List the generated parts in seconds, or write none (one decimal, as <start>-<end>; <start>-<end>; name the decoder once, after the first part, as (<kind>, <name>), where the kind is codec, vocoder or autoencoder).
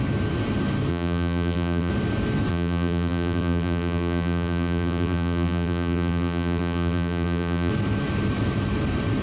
0.9-1.9 (vocoder, BigVGAN v2); 2.5-7.7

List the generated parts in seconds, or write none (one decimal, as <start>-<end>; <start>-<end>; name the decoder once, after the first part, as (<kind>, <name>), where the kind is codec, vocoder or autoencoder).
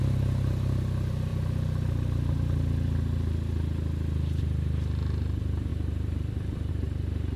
0.0-1.3 (vocoder, BigVGAN v2); 4.4-7.4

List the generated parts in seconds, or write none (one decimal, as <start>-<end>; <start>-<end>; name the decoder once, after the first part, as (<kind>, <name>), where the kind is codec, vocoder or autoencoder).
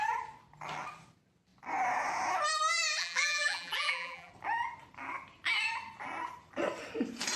3.0-4.3 (vocoder, BigVGAN v2)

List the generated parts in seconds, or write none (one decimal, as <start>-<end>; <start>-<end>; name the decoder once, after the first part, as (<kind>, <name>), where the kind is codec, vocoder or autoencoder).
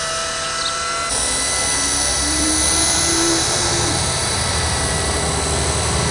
2.1-5.2 (vocoder, BigVGAN v2)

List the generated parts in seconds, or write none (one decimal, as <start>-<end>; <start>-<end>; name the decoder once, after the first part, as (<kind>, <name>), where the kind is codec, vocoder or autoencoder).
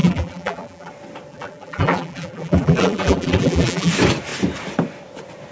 0.0-0.9 (vocoder, BigVGAN v2); 1.3-3.9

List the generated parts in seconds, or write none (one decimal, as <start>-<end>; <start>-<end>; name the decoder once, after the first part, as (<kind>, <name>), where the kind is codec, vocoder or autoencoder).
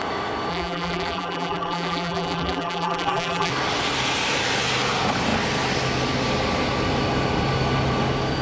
0.5-3.5 (vocoder, BigVGAN v2)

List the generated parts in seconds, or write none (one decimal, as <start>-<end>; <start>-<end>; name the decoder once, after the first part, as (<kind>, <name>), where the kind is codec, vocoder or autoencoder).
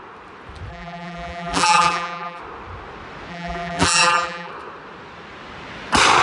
0.7-2.4 (vocoder, BigVGAN v2); 3.3-4.5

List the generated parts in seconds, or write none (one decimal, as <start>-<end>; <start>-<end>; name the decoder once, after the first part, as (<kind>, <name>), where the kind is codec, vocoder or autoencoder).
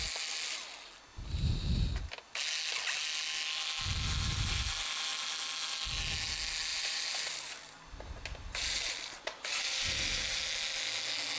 6.7-10.4 (vocoder, BigVGAN v2)